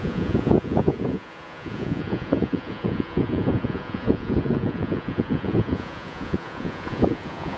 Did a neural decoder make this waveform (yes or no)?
yes